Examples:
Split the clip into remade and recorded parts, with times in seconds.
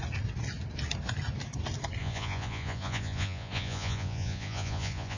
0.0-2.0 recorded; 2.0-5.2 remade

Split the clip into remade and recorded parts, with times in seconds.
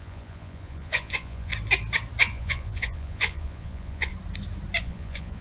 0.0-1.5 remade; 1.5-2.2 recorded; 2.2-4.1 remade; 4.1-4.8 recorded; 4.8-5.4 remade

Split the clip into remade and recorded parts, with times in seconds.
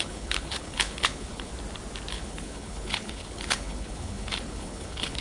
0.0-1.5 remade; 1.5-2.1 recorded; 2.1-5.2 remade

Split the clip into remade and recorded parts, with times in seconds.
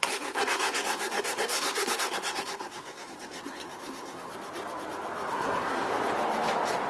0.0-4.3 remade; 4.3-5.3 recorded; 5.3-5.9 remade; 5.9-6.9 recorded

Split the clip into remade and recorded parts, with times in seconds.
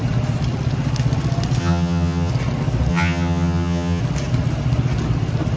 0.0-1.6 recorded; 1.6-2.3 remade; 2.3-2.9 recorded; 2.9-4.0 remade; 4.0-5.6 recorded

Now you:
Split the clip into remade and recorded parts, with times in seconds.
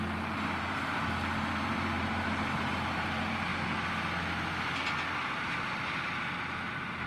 0.0-3.5 remade; 3.5-5.3 recorded; 5.3-7.1 remade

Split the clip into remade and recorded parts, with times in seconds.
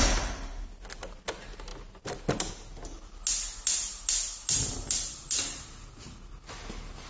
0.0-7.1 recorded